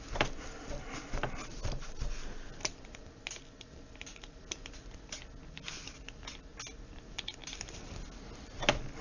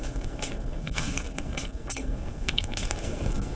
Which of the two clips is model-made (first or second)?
second